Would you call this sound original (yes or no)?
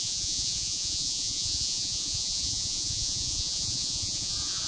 no